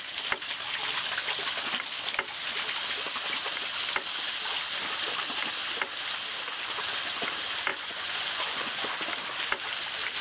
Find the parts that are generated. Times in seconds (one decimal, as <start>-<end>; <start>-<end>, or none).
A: 7.7-8.9

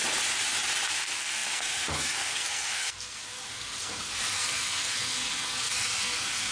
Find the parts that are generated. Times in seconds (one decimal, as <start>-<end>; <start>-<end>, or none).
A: 0.9-6.5

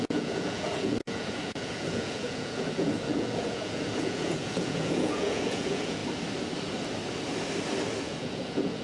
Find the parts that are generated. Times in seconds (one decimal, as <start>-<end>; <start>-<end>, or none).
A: 0.0-6.0; 8.0-8.8